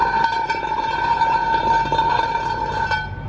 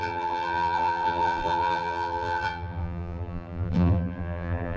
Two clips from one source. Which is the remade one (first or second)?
second